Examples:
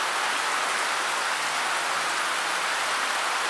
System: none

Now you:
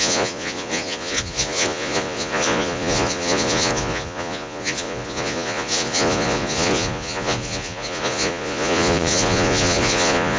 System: vocoder, Vocos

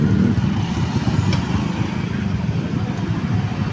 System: none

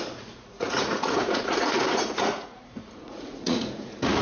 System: vocoder, Vocos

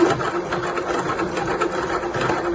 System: none